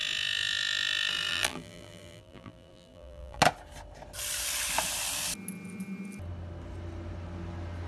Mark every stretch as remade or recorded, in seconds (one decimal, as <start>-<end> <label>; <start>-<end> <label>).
0.0-1.3 recorded; 1.3-3.4 remade; 3.4-7.9 recorded